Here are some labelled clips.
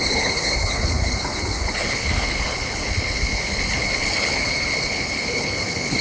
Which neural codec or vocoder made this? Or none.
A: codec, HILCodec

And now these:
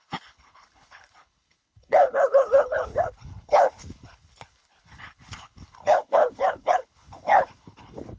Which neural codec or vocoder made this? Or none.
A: codec, HILCodec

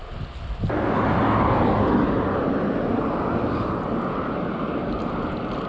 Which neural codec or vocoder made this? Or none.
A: none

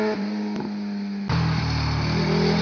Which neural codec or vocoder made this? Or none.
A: none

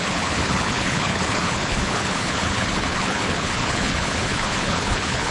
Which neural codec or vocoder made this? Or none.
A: codec, HILCodec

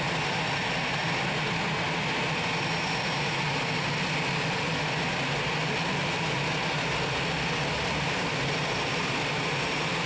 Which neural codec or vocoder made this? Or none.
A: none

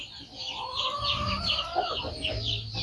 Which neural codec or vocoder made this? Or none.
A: none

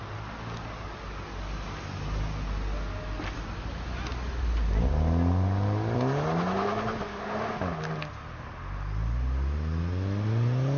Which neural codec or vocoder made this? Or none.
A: none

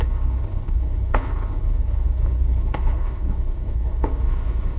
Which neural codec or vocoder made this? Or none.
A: codec, HILCodec